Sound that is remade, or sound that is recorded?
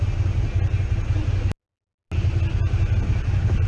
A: recorded